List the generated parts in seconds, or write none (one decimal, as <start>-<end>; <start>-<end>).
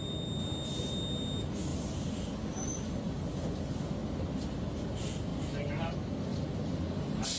none